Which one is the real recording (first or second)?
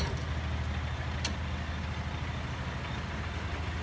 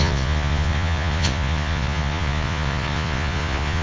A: first